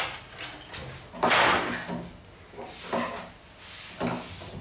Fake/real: real